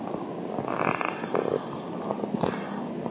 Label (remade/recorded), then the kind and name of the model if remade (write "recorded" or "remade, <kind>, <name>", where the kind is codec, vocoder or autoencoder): recorded